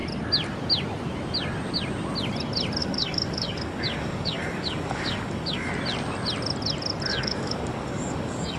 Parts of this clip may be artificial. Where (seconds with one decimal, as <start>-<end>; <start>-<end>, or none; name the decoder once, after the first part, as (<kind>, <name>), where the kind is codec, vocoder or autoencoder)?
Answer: 2.8-5.7 (codec, DAC); 7.1-8.6